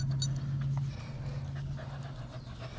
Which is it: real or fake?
real